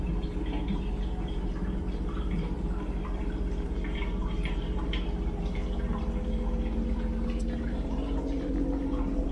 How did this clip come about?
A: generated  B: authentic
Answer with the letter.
A